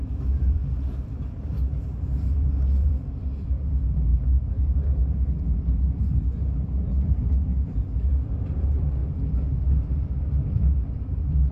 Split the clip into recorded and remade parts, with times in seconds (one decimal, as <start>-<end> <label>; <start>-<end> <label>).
0.0-4.1 remade; 4.1-6.9 recorded; 6.9-7.5 remade; 7.5-8.1 recorded; 8.1-11.5 remade